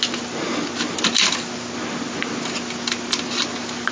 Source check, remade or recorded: recorded